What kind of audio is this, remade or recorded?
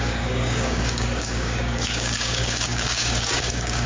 remade